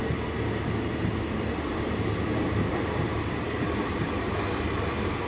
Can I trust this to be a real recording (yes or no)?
yes